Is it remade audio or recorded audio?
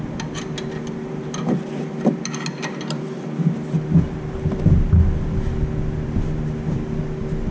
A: recorded